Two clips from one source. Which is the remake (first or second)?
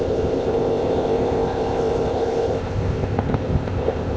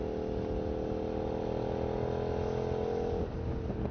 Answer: first